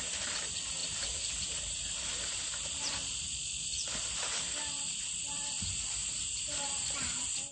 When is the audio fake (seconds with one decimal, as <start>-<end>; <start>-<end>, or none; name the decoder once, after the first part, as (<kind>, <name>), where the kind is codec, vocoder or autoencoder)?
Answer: 0.0-3.0 (vocoder, BigVGAN v2); 3.7-7.5